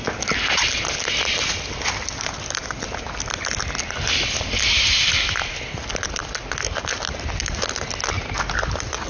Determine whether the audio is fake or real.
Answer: real